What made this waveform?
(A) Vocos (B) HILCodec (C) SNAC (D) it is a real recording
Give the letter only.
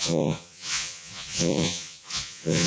A